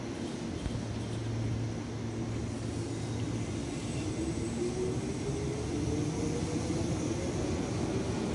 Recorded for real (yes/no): yes